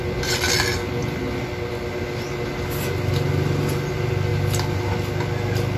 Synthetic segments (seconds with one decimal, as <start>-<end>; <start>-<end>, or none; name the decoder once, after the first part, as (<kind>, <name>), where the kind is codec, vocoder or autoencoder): none